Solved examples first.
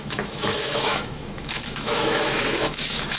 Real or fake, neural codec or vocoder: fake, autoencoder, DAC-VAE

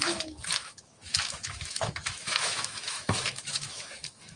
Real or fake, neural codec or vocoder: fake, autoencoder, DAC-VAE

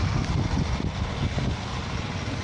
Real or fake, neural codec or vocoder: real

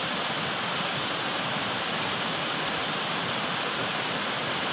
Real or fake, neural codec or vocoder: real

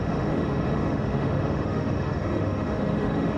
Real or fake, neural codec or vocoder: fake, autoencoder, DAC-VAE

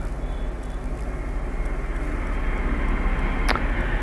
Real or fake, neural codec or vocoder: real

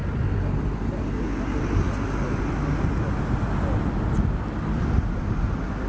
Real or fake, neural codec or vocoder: real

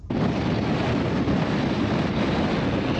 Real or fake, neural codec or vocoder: real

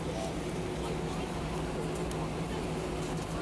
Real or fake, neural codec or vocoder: real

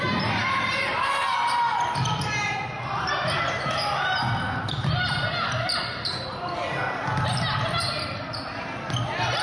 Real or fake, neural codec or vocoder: real